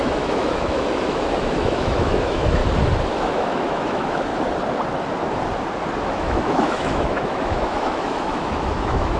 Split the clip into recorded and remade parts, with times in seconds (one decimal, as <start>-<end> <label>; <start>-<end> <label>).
0.0-2.6 remade; 2.6-3.1 recorded; 3.1-4.3 remade; 4.3-6.1 recorded; 6.1-9.2 remade